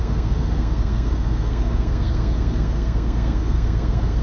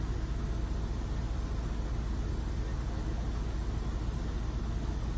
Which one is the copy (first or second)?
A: first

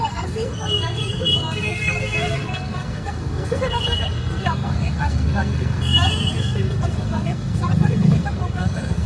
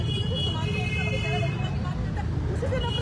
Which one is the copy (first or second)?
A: first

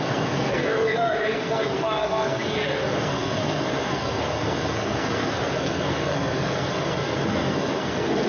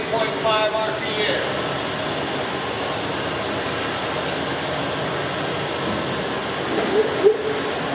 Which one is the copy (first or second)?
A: first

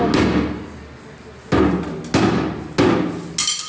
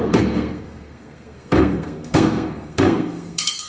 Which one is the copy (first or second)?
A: second